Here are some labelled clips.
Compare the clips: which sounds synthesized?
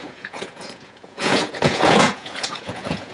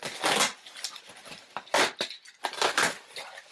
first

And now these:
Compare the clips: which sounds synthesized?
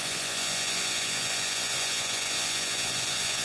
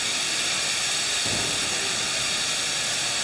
first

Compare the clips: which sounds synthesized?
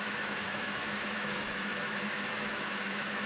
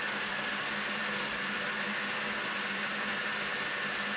first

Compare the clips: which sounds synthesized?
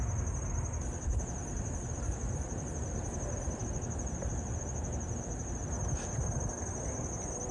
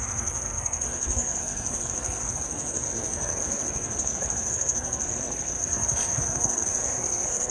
second